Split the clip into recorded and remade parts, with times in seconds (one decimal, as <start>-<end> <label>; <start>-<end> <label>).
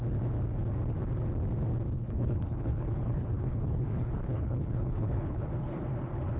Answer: 0.0-2.0 recorded; 2.0-5.8 remade; 5.8-6.4 recorded